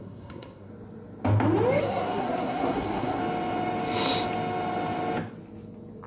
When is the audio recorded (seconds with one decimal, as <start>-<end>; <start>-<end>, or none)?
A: 0.7-1.8; 3.2-6.1